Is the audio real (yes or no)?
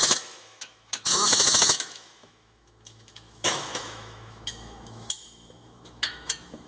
no